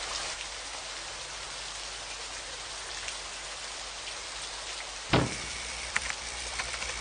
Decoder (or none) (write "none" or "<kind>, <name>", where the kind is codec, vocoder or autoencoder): none